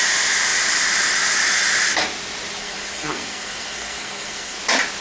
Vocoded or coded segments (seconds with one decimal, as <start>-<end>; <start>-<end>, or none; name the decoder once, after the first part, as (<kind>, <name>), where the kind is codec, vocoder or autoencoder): 2.6-4.6 (codec, SNAC)